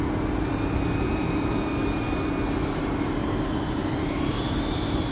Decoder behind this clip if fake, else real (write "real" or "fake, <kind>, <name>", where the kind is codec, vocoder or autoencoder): real